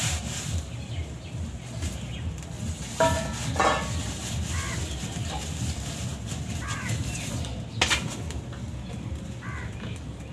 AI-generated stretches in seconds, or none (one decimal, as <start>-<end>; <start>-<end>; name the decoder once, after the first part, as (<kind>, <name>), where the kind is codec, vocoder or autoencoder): 0.0-1.5 (vocoder, BigVGAN v2)